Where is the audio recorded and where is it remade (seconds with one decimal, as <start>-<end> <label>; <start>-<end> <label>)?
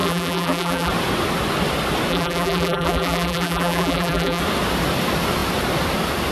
0.0-0.9 remade; 0.9-2.1 recorded; 2.1-4.4 remade; 4.4-6.3 recorded